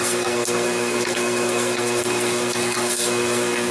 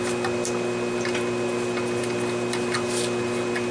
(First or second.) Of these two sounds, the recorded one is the second